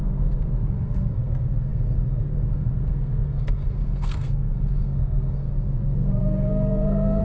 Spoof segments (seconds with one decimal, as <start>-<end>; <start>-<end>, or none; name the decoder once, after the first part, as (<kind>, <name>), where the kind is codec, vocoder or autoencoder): 0.0-7.2 (codec, SNAC)

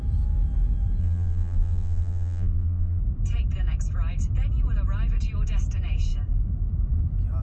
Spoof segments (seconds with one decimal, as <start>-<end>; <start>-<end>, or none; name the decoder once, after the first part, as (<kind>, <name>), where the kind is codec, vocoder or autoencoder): 1.0-3.0 (vocoder, BigVGAN v2)